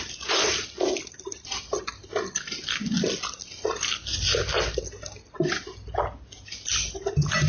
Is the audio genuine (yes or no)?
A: yes